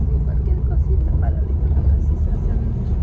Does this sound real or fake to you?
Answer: real